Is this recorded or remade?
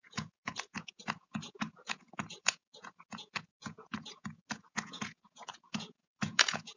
remade